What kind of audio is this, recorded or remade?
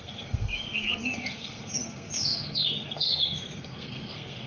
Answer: remade